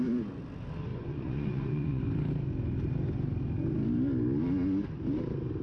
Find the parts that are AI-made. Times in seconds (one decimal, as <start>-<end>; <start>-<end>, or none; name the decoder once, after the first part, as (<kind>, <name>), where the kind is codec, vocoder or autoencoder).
0.9-2.0 (vocoder, Vocos)